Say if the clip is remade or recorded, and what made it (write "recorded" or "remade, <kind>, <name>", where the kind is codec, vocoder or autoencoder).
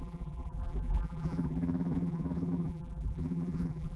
remade, vocoder, BigVGAN v2